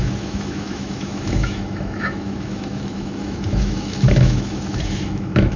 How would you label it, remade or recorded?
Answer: remade